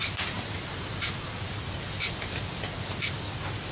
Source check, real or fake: real